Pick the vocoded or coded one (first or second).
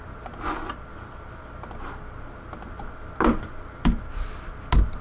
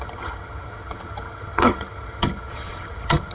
second